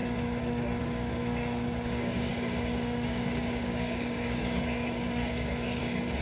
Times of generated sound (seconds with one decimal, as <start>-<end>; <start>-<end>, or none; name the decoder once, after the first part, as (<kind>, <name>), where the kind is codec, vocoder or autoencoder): 0.0-6.2 (codec, DAC)